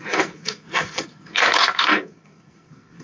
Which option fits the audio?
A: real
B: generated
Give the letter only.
B